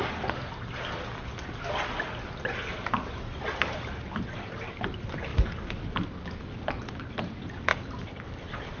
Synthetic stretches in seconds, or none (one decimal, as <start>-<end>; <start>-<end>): none